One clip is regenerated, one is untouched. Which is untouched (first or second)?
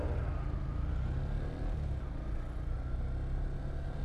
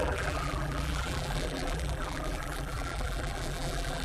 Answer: first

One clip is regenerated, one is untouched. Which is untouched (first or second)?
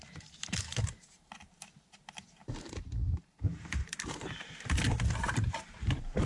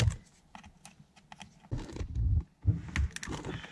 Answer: second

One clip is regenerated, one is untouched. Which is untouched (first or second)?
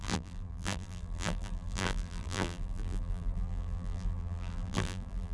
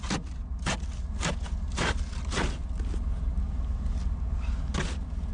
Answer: second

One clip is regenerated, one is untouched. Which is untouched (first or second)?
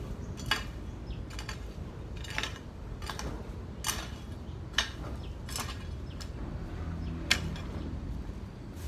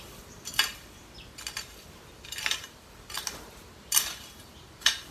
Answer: first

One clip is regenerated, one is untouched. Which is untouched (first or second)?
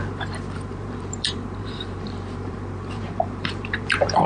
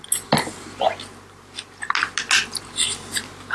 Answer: second